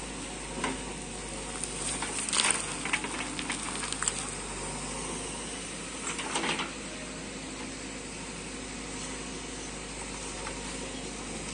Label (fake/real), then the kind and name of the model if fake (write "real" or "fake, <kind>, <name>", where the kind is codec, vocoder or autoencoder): real